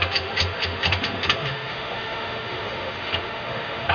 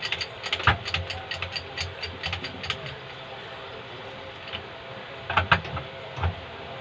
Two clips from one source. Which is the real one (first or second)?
second